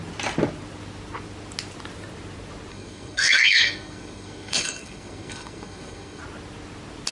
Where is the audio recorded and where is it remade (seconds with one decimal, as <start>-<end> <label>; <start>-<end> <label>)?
0.0-2.7 recorded; 2.7-6.2 remade; 6.2-7.1 recorded

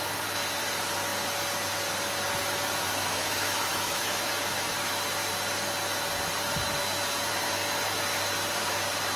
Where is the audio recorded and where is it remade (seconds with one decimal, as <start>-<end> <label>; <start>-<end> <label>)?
0.0-2.9 recorded; 2.9-4.3 remade; 4.3-9.2 recorded